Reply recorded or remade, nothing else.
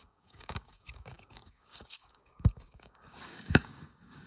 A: remade